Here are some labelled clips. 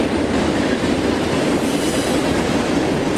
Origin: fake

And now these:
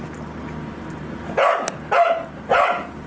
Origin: real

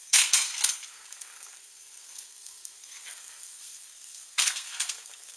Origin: fake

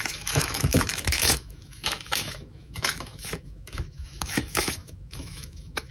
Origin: fake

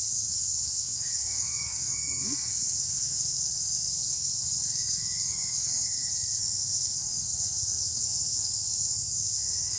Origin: fake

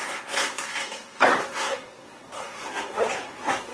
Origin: fake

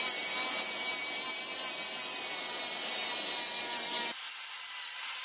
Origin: real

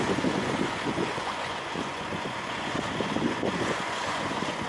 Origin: fake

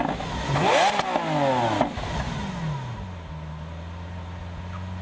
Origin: real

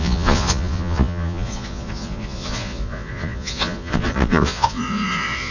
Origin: fake